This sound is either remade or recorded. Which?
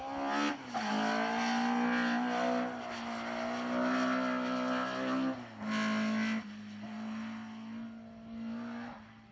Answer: recorded